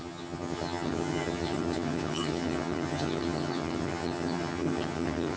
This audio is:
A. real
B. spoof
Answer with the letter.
B